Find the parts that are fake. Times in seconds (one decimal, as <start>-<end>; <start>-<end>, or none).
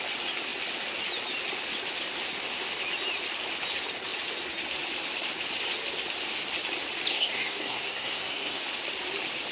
7.1-8.6